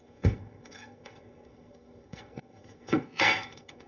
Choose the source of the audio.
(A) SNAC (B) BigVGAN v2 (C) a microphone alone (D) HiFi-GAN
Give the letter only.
A